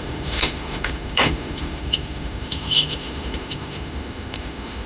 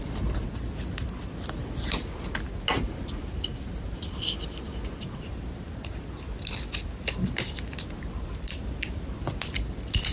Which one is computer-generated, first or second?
first